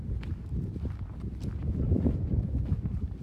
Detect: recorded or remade recorded